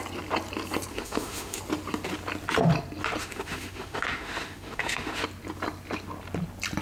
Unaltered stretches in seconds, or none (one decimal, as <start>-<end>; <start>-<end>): 0.0-0.9; 1.6-3.2; 5.2-6.8